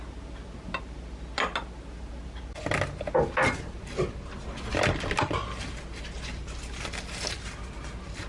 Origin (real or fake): real